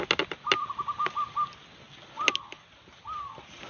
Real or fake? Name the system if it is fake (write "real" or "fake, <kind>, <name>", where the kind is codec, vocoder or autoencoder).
real